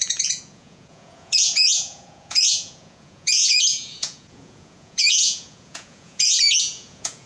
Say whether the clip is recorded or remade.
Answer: remade